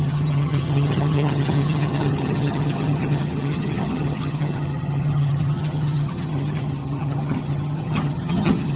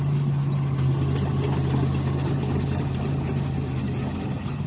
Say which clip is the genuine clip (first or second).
second